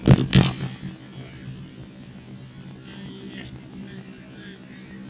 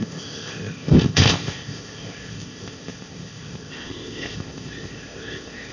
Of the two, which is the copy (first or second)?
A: second